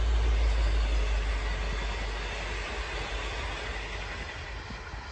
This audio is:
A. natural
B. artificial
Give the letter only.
A